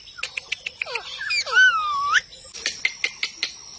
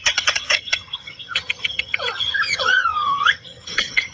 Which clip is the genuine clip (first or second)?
first